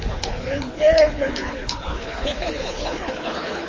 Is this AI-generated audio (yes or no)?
yes